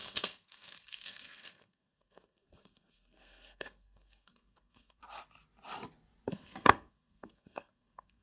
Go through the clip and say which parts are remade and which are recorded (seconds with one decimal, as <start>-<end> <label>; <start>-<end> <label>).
0.0-5.0 remade; 5.0-6.3 recorded; 6.3-8.2 remade